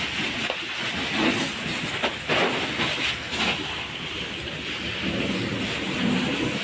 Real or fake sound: real